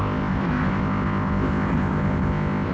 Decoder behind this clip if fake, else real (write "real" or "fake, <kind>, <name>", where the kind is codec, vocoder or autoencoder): fake, codec, ZipCodec